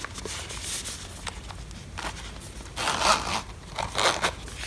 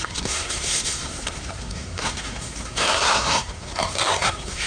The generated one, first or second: second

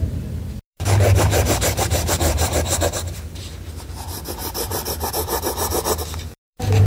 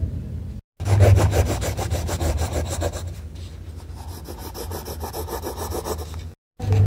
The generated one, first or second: first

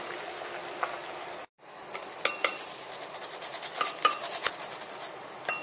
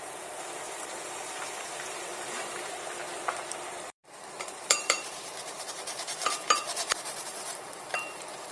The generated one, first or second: second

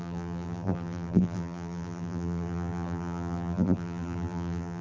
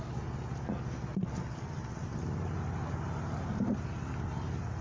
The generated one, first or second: first